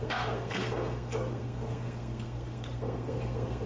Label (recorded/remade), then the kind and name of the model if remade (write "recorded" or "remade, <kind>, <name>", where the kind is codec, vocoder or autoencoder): remade, codec, SNAC